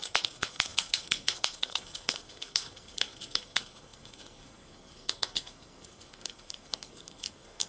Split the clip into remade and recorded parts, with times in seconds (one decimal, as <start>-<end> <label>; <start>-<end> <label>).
0.0-7.7 remade